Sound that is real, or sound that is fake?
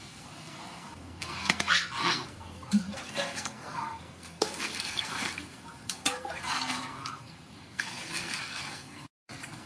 fake